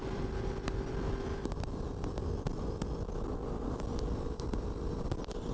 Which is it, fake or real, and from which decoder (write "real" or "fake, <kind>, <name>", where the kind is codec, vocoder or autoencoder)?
fake, vocoder, BigVGAN v2